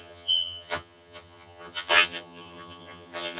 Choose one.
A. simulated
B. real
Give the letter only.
A